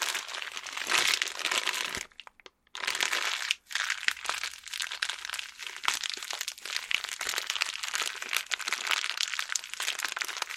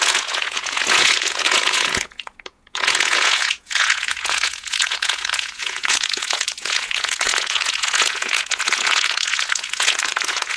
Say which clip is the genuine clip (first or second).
first